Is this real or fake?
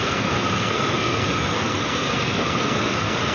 fake